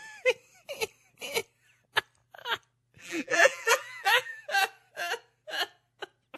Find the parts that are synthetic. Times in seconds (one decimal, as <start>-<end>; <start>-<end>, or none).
3.0-4.4